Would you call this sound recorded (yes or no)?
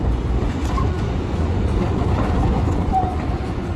no